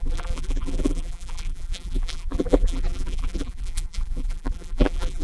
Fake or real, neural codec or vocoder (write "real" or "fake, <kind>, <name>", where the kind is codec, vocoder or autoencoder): fake, vocoder, BigVGAN v2